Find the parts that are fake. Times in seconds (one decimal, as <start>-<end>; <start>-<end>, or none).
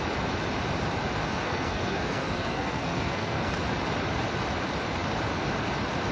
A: 1.2-3.5